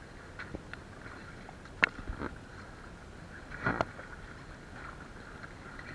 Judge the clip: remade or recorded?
recorded